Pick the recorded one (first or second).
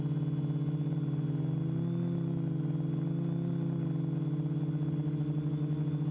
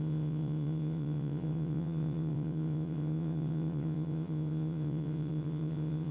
first